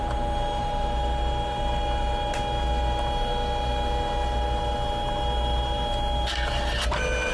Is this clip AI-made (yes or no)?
no